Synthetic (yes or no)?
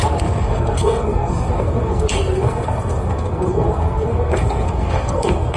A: yes